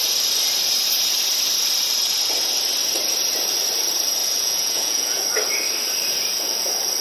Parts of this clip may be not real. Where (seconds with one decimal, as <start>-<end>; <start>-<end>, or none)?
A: 4.2-5.2